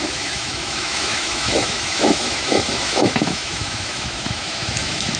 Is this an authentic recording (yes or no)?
no